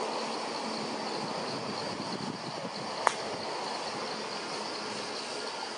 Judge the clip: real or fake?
real